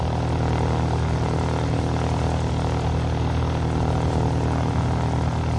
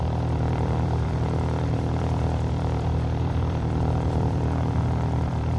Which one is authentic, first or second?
first